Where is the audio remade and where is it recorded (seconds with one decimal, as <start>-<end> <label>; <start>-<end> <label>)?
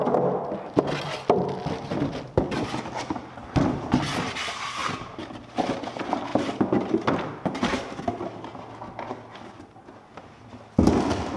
0.0-4.8 recorded; 4.8-5.8 remade; 5.8-6.3 recorded; 6.3-8.1 remade; 8.1-11.4 recorded